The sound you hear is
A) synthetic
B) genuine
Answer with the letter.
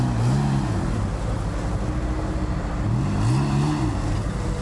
B